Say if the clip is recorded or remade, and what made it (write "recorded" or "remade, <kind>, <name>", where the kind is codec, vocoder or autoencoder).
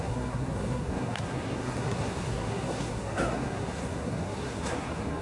remade, codec, SNAC